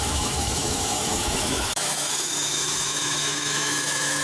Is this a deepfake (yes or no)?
yes